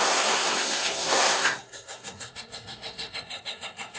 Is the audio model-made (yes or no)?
yes